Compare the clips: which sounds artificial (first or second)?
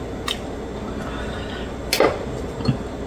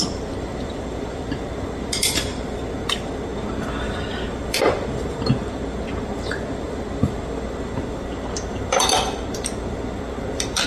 second